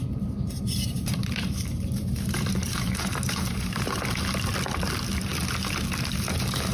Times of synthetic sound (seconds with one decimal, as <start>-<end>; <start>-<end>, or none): 0.0-4.0